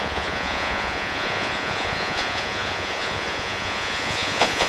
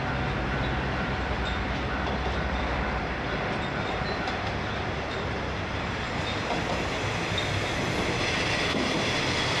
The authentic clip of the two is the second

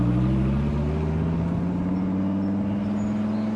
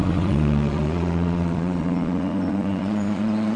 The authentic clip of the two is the first